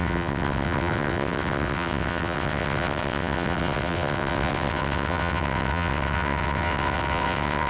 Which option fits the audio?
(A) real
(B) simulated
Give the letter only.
B